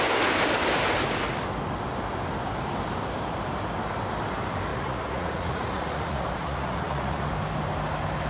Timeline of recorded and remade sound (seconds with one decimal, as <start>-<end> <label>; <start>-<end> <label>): 0.0-4.7 recorded; 4.7-7.3 remade; 7.3-8.3 recorded